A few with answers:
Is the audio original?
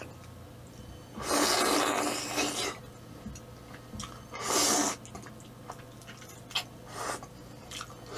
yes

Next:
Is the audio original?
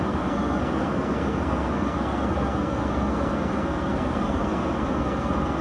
no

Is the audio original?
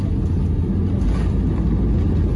yes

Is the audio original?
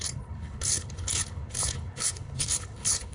no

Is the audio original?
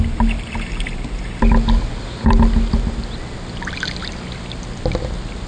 yes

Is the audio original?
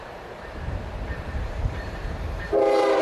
no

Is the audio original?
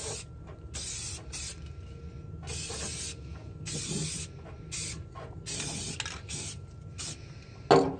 yes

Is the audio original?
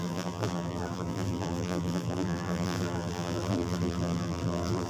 no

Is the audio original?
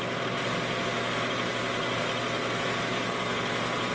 yes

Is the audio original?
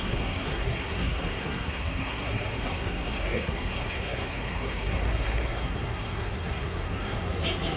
no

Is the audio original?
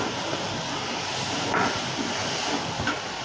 yes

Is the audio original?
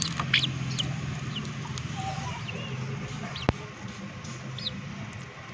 yes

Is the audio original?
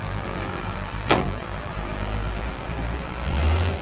no